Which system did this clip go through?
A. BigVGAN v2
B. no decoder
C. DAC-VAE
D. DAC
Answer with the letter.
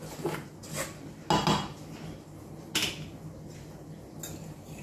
B